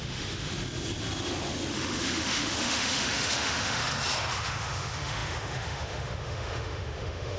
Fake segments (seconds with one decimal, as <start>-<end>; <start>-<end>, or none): 0.0-0.5; 1.7-3.8; 4.3-7.4